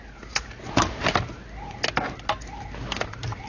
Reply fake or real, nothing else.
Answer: real